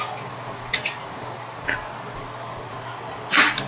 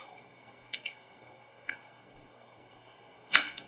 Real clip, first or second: first